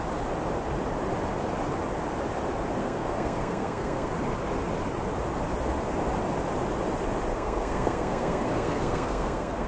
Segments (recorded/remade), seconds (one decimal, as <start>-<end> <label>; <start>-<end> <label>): 0.0-2.8 recorded; 2.8-4.1 remade; 4.1-7.3 recorded; 7.3-9.7 remade